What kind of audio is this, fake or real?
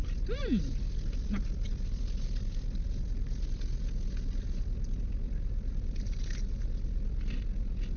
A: real